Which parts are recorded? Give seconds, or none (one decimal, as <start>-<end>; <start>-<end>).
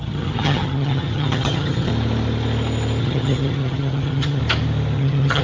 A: 1.9-3.0; 4.4-5.0